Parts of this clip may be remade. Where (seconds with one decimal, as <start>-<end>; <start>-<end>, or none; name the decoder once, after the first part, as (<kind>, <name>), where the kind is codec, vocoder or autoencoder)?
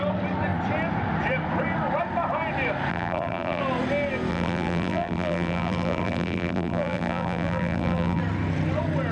2.9-3.6 (vocoder, BigVGAN v2); 4.3-8.2